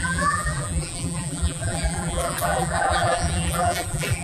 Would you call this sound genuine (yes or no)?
no